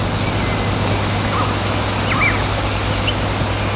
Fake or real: real